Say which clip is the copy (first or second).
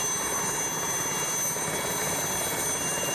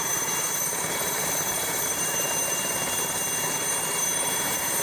second